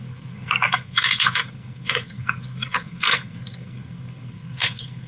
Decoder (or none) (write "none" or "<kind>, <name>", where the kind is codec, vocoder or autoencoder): codec, SNAC